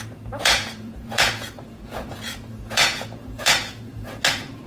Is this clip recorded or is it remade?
remade